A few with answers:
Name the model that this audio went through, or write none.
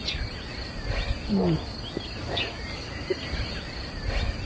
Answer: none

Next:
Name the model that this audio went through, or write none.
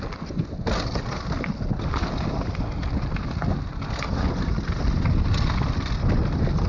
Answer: none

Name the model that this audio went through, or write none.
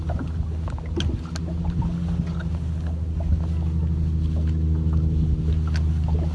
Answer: none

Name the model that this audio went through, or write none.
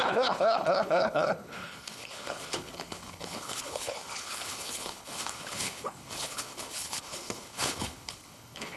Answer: codec, HILCodec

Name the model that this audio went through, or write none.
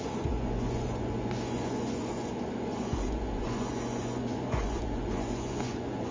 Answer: vocoder, Vocos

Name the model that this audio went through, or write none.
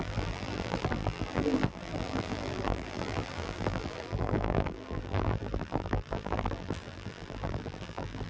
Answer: vocoder, BigVGAN v2